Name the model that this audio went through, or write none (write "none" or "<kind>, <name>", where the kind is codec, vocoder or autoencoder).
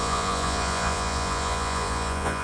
vocoder, Vocos